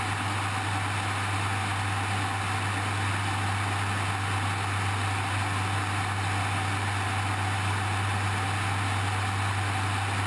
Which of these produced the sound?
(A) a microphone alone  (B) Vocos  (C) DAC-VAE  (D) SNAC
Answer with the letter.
A